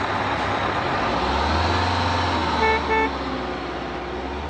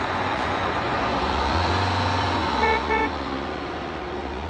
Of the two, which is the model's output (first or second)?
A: second